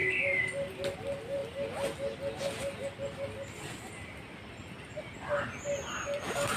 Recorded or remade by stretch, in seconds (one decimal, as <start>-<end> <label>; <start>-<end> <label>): 0.0-0.7 remade; 0.7-1.4 recorded; 1.4-5.4 remade; 5.4-6.6 recorded